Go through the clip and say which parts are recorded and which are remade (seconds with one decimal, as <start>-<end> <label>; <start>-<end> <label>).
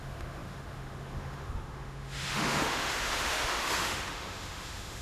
0.0-5.0 remade